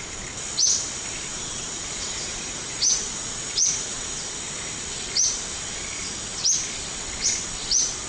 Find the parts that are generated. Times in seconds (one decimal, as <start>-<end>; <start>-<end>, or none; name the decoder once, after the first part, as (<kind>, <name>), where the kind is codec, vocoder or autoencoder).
1.3-4.2 (vocoder, Vocos)